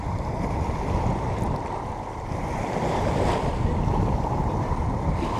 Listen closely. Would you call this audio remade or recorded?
remade